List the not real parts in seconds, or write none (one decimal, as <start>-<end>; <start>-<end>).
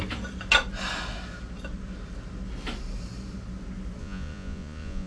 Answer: 4.0-5.1